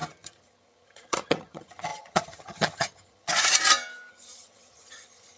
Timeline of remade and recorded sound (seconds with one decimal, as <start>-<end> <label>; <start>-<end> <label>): 0.0-3.3 remade; 3.3-4.1 recorded; 4.1-5.4 remade

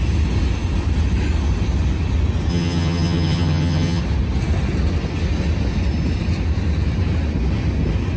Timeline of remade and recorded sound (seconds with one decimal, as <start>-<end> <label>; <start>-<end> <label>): 0.0-2.5 recorded; 2.5-4.0 remade; 4.0-8.2 recorded

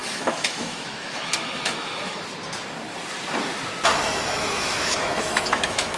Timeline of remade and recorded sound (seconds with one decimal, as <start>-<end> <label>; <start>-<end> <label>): 0.0-2.2 remade; 2.2-3.9 recorded; 3.9-6.0 remade

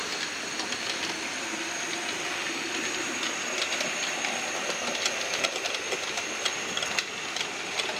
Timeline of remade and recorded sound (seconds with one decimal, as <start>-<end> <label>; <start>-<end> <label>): 0.0-8.0 recorded

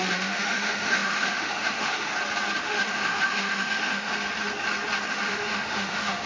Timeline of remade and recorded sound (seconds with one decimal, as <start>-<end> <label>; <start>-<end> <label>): 0.0-2.1 remade; 2.1-2.6 recorded; 2.6-4.1 remade; 4.1-5.1 recorded; 5.1-6.3 remade

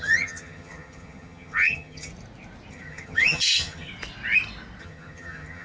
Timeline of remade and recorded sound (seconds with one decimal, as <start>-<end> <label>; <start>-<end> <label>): 0.0-2.1 remade; 2.1-2.7 recorded; 2.7-3.9 remade; 3.9-4.8 recorded; 4.8-5.6 remade